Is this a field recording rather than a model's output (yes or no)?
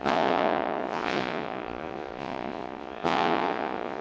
no